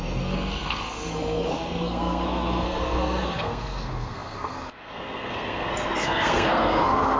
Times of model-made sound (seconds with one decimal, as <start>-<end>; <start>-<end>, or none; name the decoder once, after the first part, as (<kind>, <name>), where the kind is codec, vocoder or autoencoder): 0.0-7.2 (codec, SNAC)